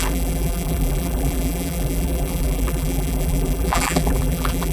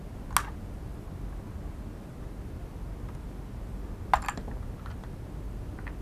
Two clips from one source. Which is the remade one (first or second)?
first